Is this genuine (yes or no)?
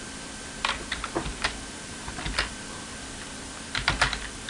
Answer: no